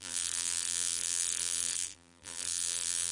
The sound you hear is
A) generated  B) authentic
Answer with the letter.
A